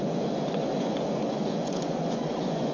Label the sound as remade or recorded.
remade